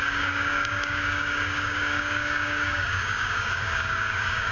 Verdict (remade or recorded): remade